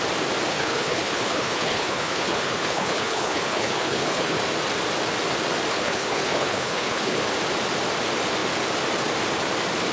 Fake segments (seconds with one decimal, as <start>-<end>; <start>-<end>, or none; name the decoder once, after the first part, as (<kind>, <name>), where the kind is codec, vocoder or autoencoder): 0.5-4.4 (codec, HILCodec); 5.7-7.2